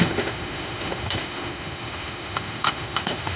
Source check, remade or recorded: remade